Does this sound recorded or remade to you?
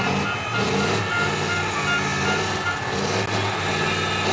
recorded